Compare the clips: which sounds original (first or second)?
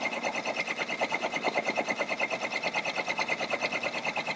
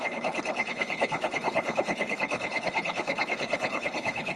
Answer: first